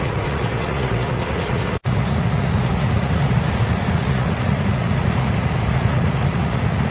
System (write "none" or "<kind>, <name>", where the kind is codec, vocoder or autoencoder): vocoder, Vocos